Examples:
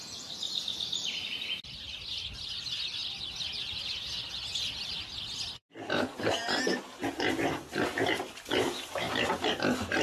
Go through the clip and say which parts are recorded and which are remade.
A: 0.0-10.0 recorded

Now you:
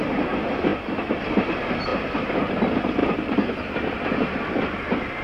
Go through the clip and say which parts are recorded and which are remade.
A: 0.0-3.0 recorded; 3.0-4.1 remade; 4.1-5.2 recorded

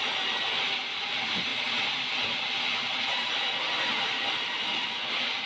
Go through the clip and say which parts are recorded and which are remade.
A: 0.0-1.5 recorded; 1.5-3.3 remade; 3.3-5.5 recorded